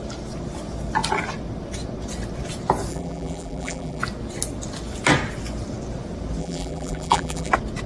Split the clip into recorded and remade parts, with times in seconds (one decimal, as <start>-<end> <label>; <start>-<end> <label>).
0.0-2.9 recorded; 2.9-4.0 remade; 4.0-6.4 recorded; 6.4-7.5 remade; 7.5-7.9 recorded